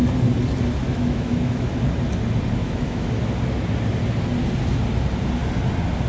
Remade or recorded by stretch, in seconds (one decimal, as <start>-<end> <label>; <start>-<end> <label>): 0.0-0.8 recorded; 0.8-1.7 remade; 1.7-2.6 recorded; 2.6-3.1 remade; 3.1-6.1 recorded